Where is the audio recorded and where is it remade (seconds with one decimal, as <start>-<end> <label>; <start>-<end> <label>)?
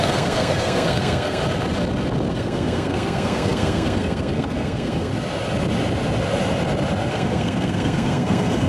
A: 0.0-1.4 remade; 1.4-2.3 recorded; 2.3-5.1 remade; 5.1-7.1 recorded; 7.1-8.7 remade